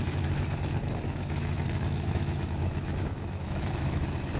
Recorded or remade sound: remade